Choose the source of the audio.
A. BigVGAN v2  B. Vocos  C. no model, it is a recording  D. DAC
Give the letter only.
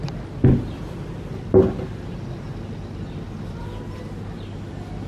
C